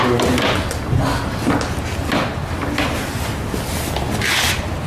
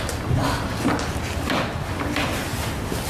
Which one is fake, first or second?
second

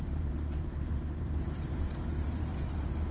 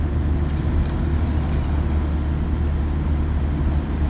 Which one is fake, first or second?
first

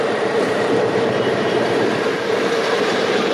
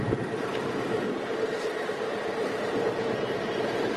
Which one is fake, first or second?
first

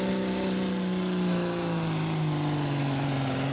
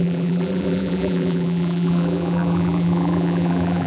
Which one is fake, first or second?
second